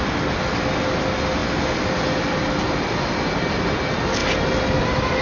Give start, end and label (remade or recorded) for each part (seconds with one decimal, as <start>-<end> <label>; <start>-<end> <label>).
0.0-5.2 recorded